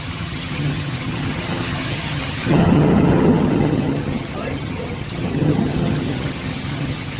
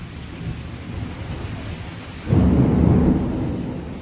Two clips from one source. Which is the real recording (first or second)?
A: second